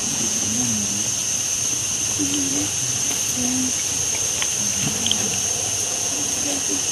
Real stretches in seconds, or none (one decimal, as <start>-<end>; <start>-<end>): 0.6-5.8; 6.4-6.9